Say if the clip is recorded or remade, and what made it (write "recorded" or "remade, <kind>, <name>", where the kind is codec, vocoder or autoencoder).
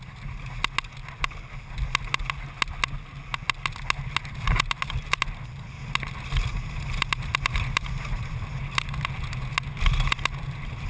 recorded